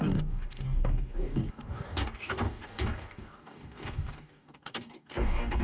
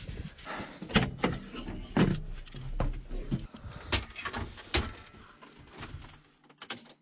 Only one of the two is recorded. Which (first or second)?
second